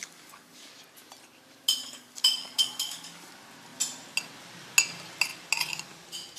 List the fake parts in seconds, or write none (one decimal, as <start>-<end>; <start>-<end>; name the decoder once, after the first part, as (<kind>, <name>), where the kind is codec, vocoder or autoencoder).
0.0-0.7 (codec, DAC); 1.8-3.3